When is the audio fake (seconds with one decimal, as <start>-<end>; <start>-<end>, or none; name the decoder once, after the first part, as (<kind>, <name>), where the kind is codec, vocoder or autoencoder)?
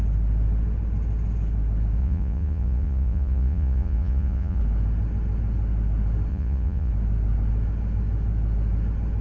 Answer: 2.0-4.6 (vocoder, Vocos); 6.3-6.9